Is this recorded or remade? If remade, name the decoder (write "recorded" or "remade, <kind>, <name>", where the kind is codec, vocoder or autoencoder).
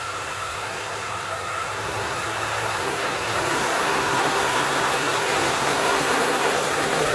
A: remade, codec, SNAC